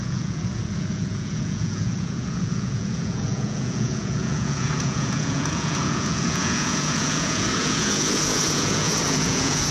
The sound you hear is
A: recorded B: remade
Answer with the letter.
B